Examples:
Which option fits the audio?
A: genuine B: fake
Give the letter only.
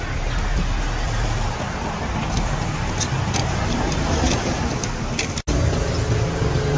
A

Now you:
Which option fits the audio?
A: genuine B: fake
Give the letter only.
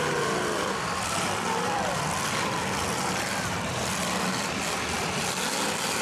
B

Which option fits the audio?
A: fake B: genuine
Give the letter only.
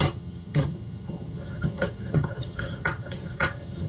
A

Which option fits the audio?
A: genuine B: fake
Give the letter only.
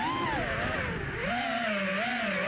A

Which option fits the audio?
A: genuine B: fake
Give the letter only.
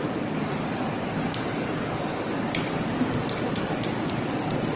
A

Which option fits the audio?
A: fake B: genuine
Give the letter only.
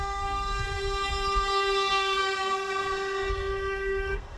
A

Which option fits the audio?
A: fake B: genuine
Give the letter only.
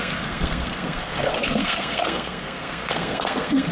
A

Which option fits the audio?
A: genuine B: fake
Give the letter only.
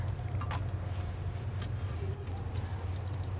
A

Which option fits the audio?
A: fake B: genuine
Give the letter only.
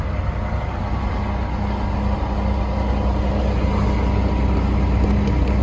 B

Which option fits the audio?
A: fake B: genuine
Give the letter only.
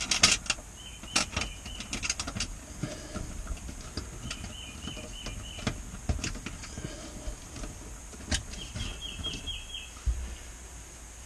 B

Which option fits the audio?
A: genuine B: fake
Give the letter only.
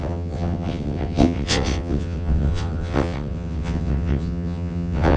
B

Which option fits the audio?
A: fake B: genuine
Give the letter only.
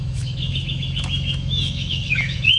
A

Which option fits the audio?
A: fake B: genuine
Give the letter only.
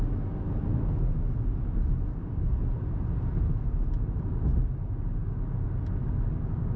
B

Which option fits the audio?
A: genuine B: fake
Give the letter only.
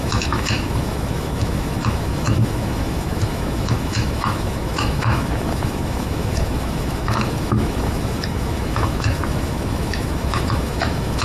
B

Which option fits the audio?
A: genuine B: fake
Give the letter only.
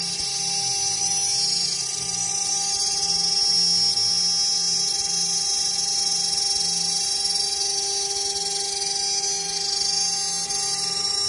A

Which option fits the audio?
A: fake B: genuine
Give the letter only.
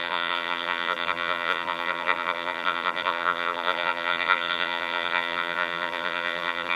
A